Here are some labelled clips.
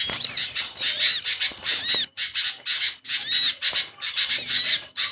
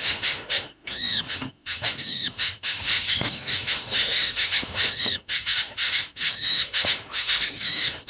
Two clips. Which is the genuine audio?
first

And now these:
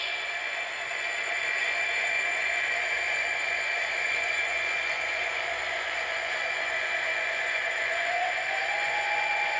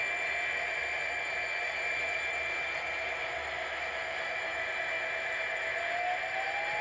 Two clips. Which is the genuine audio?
second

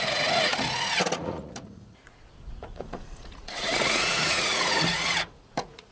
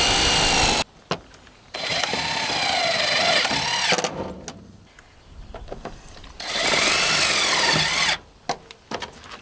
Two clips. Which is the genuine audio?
second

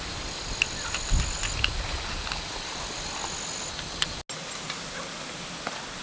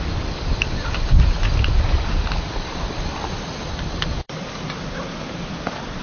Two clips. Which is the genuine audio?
first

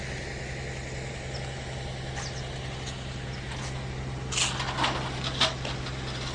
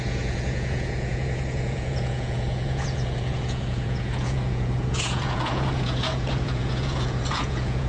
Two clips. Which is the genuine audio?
first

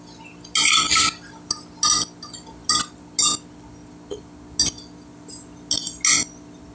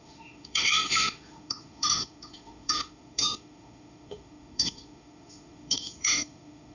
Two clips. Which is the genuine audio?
first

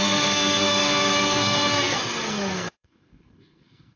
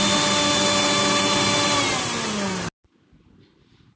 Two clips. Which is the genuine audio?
second